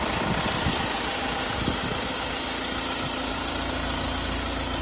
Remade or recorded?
recorded